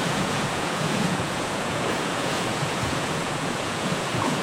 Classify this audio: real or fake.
fake